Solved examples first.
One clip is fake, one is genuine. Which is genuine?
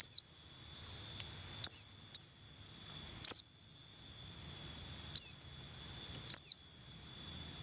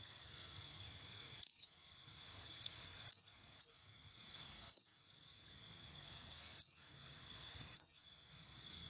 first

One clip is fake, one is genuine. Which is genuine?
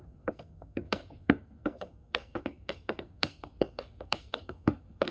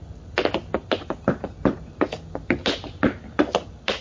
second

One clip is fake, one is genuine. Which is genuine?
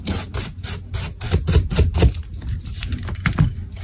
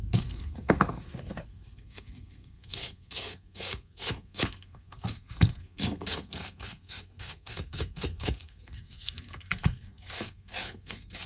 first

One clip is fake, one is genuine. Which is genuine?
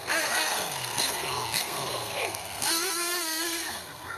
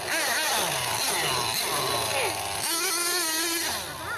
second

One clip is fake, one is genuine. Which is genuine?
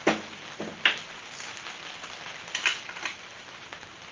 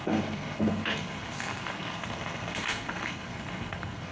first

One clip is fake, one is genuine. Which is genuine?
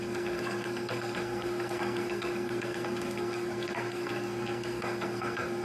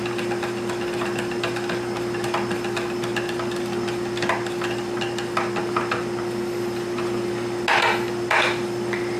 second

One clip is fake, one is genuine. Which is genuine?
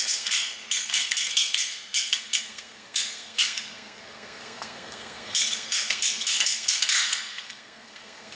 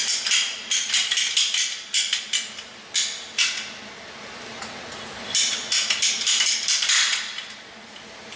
second